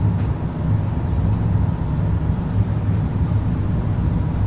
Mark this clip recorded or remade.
recorded